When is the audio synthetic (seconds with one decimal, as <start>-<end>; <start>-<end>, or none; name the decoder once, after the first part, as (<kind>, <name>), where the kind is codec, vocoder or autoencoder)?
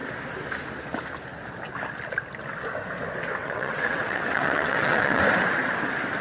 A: 3.4-5.2 (vocoder, WaveNeXt)